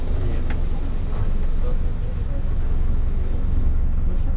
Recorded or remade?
recorded